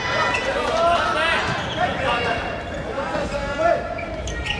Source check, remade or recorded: recorded